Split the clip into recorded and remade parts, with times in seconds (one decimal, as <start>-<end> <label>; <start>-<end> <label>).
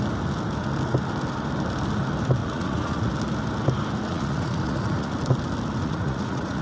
0.0-2.4 recorded; 2.4-3.1 remade; 3.1-4.1 recorded; 4.1-5.1 remade; 5.1-5.8 recorded; 5.8-6.6 remade